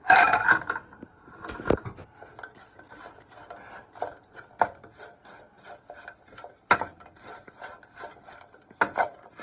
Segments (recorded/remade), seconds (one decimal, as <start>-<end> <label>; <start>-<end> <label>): 0.0-2.0 remade; 2.0-5.8 recorded; 5.8-7.7 remade; 7.7-9.0 recorded; 9.0-9.4 remade

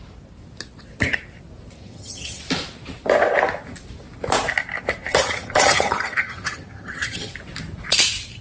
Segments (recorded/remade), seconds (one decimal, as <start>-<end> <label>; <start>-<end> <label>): 0.0-1.8 recorded; 1.8-2.4 remade; 2.4-5.1 recorded; 5.1-7.3 remade; 7.3-8.4 recorded

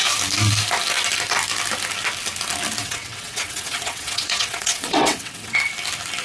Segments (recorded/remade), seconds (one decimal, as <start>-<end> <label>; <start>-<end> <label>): 0.0-2.8 recorded; 2.8-5.6 remade; 5.6-6.2 recorded

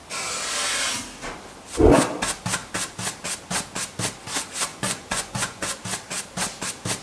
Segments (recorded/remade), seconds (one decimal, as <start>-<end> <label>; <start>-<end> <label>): 0.0-4.7 recorded; 4.7-5.8 remade; 5.8-7.0 recorded

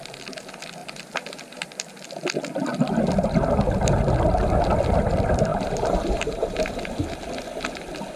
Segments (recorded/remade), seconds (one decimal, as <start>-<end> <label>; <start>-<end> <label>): 0.0-0.8 recorded; 0.8-1.9 remade; 1.9-5.5 recorded; 5.5-6.7 remade; 6.7-8.2 recorded

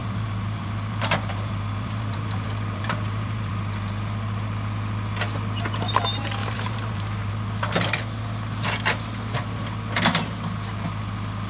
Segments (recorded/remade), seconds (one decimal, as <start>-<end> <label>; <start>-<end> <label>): 0.0-3.5 remade; 3.5-6.4 recorded; 6.4-7.3 remade; 7.3-11.5 recorded

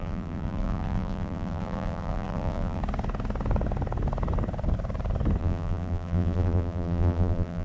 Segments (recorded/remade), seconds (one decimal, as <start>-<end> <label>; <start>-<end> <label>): 0.0-2.8 remade; 2.8-5.4 recorded; 5.4-7.6 remade

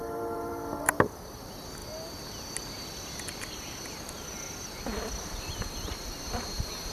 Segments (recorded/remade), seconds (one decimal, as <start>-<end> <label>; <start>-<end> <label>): 0.0-1.8 remade; 1.8-5.2 recorded; 5.2-6.9 remade